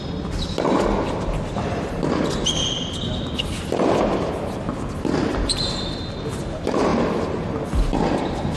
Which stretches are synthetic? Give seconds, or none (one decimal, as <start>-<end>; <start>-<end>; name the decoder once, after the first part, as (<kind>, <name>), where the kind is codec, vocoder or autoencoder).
none